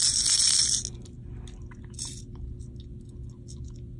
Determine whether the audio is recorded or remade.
recorded